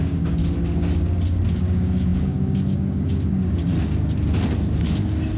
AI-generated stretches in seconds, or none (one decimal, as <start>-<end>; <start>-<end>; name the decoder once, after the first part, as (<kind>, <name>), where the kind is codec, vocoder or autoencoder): 0.0-0.4 (codec, DAC); 1.6-3.7